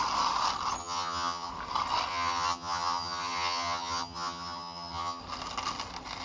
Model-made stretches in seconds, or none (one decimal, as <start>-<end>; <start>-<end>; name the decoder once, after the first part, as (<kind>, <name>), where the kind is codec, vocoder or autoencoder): 0.8-1.5 (vocoder, HiFi-GAN); 2.1-5.2